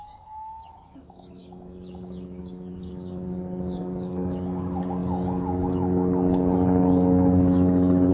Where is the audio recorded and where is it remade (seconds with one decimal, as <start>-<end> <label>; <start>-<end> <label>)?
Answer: 0.0-8.1 remade